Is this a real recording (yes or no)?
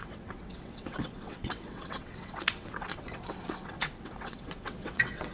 no